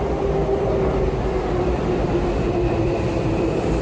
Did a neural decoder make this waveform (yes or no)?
yes